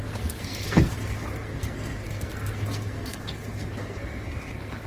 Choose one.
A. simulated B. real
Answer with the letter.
A